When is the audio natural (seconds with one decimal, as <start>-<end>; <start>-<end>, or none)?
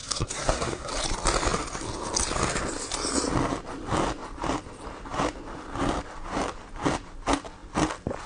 0.9-8.3